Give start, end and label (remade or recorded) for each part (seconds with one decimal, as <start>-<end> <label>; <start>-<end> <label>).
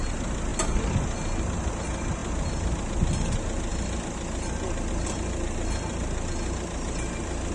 0.0-7.5 recorded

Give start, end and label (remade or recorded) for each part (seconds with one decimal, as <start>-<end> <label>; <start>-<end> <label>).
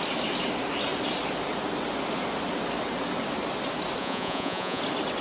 0.0-4.0 recorded; 4.0-4.8 remade; 4.8-5.2 recorded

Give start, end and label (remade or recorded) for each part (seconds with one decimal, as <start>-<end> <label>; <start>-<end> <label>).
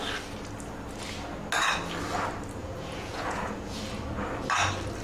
0.0-2.6 recorded; 2.6-3.8 remade; 3.8-5.0 recorded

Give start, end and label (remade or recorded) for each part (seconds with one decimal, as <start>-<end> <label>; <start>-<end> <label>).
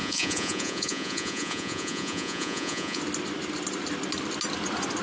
0.0-3.0 remade; 3.0-5.0 recorded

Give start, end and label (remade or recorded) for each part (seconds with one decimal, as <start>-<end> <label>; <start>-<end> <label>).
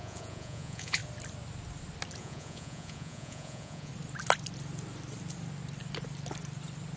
0.0-1.0 remade; 1.0-2.2 recorded; 2.2-3.9 remade; 3.9-7.0 recorded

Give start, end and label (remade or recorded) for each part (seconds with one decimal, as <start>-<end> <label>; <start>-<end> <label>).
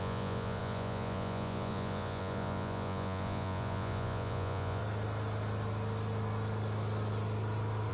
0.0-4.8 remade; 4.8-7.9 recorded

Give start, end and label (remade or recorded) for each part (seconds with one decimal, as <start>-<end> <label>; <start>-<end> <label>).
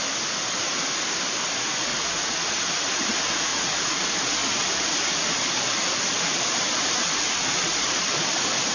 0.0-1.9 recorded; 1.9-2.6 remade; 2.6-3.5 recorded; 3.5-4.0 remade; 4.0-8.7 recorded